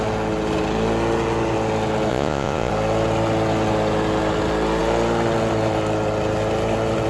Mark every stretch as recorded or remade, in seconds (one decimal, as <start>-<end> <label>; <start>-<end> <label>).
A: 0.0-2.1 recorded; 2.1-2.7 remade; 2.7-7.1 recorded